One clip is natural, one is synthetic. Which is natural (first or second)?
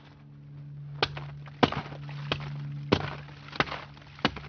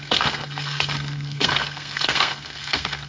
first